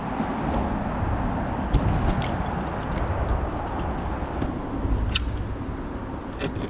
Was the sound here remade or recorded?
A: recorded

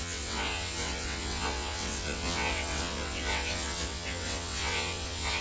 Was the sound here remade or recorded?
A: remade